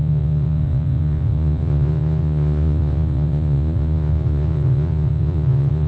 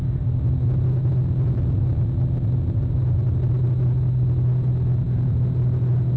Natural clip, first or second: second